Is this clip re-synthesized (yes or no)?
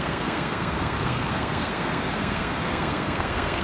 yes